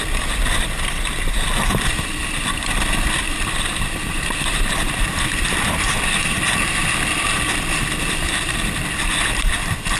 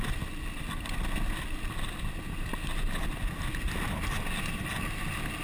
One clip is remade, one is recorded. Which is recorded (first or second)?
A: second